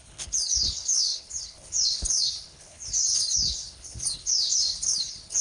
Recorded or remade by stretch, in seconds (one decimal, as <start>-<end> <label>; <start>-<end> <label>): 0.0-5.4 remade